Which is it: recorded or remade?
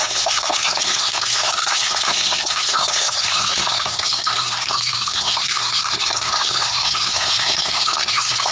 remade